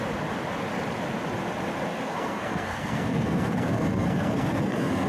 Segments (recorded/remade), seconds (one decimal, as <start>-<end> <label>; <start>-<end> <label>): 0.0-1.9 recorded; 1.9-5.1 remade